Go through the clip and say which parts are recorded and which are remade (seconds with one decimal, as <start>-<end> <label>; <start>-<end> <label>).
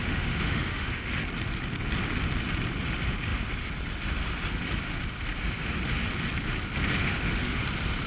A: 0.0-1.1 remade; 1.1-7.0 recorded; 7.0-7.6 remade; 7.6-8.1 recorded